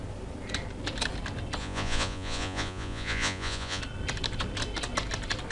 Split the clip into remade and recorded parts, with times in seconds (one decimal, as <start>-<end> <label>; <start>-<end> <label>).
0.0-1.6 recorded; 1.6-3.8 remade; 3.8-5.5 recorded